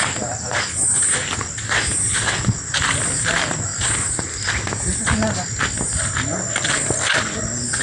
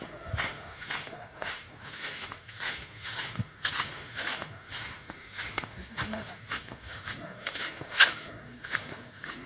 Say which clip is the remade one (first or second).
second